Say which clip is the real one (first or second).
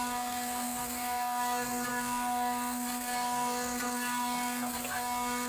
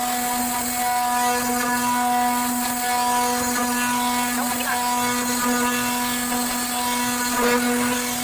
second